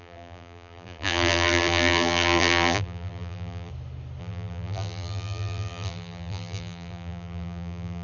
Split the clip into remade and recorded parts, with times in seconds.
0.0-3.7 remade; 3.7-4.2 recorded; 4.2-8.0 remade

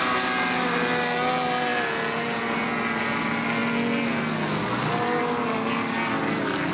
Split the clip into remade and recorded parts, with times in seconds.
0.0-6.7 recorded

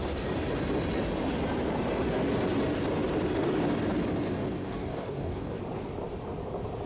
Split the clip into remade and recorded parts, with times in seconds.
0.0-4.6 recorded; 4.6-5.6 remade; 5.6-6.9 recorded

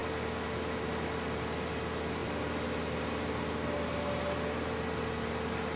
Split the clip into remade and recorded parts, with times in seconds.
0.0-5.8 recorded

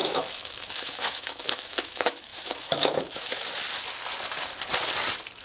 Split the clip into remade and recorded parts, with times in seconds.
0.0-3.4 remade; 3.4-5.4 recorded

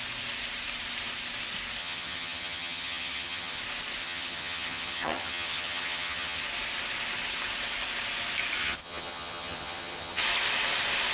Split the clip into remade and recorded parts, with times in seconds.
0.0-1.8 recorded; 1.8-3.6 remade; 3.6-4.0 recorded; 4.0-6.4 remade; 6.4-8.6 recorded; 8.6-10.2 remade; 10.2-11.1 recorded

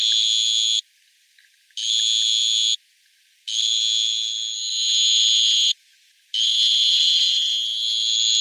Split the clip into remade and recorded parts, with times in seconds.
0.0-6.9 recorded; 6.9-7.5 remade; 7.5-8.4 recorded